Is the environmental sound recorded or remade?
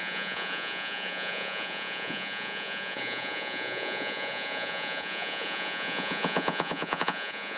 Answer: remade